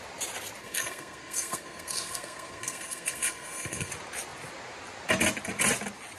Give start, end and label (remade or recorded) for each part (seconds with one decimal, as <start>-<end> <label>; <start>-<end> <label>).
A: 0.0-0.6 recorded; 0.6-3.9 remade; 3.9-6.2 recorded